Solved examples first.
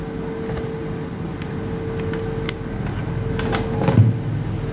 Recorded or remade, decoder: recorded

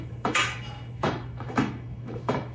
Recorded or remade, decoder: remade, autoencoder, DAC-VAE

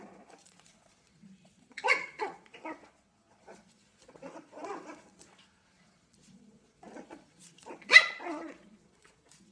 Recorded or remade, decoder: remade, vocoder, Vocos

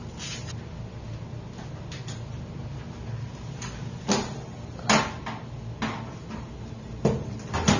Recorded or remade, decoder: recorded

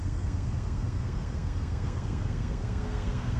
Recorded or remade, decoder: remade, codec, SNAC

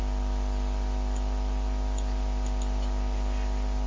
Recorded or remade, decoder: recorded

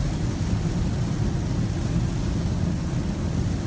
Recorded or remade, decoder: recorded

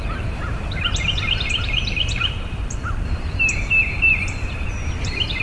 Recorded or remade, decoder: remade, vocoder, BigVGAN v2